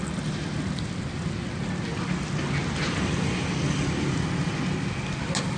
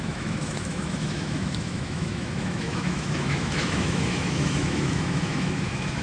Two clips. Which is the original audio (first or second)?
first